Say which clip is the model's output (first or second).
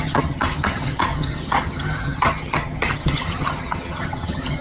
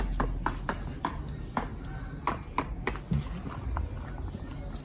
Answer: first